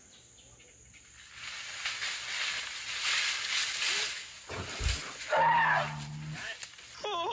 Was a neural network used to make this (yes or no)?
no